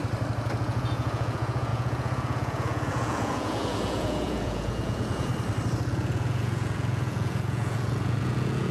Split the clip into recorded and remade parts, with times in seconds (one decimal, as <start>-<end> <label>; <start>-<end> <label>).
0.0-0.6 recorded; 0.6-5.3 remade; 5.3-5.9 recorded; 5.9-8.7 remade